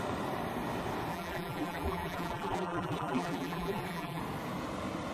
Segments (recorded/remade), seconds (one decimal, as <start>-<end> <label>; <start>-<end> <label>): 0.0-1.1 recorded; 1.1-4.2 remade; 4.2-5.1 recorded